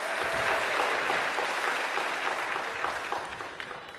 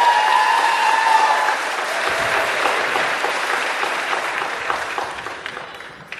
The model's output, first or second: second